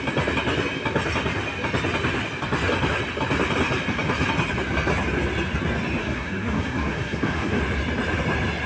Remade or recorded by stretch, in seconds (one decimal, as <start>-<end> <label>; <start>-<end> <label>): 0.0-6.0 recorded; 6.0-7.6 remade; 7.6-8.7 recorded